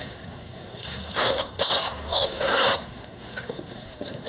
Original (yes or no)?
no